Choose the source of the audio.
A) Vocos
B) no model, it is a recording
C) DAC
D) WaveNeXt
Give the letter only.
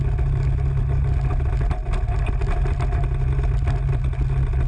B